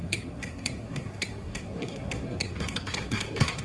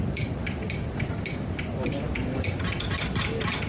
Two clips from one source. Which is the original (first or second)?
second